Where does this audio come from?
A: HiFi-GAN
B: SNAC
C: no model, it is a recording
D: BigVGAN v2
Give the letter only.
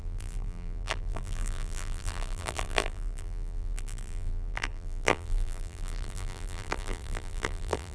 D